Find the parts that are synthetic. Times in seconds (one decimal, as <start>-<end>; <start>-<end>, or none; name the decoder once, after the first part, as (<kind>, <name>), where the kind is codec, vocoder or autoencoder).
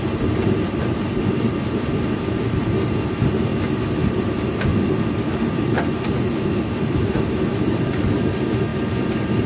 0.0-3.5 (vocoder, BigVGAN v2); 4.1-4.7; 5.5-9.5